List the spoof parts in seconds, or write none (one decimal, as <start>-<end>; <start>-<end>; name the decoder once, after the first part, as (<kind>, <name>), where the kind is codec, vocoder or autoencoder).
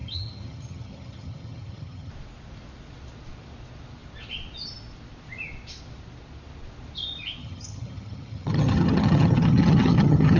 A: 0.0-2.1 (vocoder, HiFi-GAN); 7.4-10.4